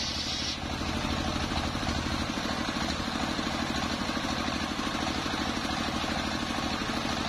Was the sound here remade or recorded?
recorded